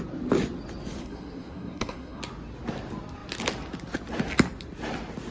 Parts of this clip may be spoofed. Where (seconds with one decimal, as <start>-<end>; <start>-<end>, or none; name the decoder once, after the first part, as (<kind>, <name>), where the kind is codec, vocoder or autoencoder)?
1.0-2.2 (codec, SNAC)